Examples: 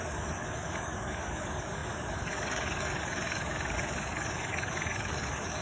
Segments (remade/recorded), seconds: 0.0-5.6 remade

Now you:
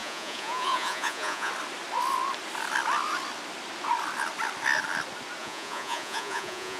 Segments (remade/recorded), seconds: 0.0-1.5 remade; 1.5-5.4 recorded; 5.4-6.8 remade